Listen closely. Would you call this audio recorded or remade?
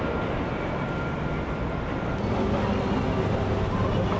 recorded